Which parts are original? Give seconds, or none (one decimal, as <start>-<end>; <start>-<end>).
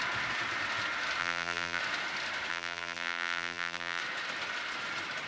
0.0-1.2; 1.8-2.5; 4.0-5.3